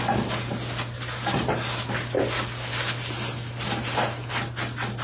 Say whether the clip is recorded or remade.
recorded